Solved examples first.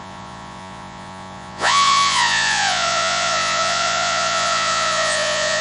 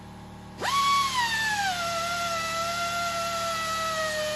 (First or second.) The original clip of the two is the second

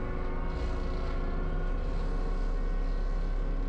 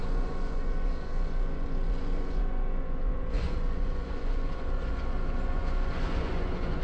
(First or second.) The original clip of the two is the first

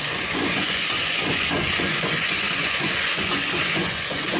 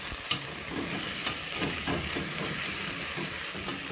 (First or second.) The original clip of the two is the second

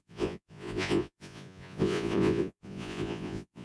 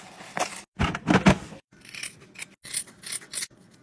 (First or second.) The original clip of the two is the second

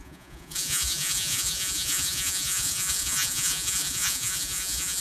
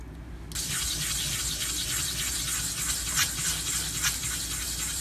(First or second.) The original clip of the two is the second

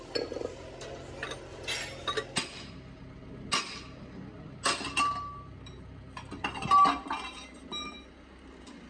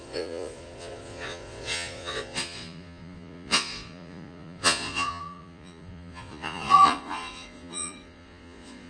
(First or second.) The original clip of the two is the first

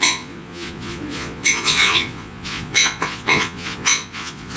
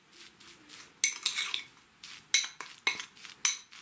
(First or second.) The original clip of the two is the second